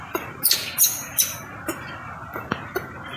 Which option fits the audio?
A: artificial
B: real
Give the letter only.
B